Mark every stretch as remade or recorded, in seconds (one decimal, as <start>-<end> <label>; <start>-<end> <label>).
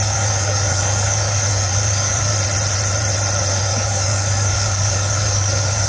0.0-2.3 remade; 2.3-3.5 recorded; 3.5-5.9 remade